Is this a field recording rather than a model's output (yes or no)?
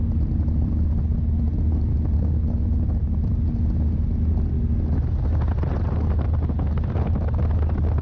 yes